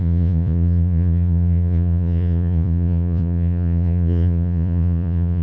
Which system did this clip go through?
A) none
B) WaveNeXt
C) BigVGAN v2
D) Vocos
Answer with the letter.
D